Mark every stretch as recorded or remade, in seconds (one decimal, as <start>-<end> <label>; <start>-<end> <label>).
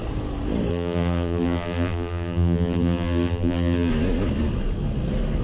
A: 0.0-0.7 recorded; 0.7-3.9 remade; 3.9-5.4 recorded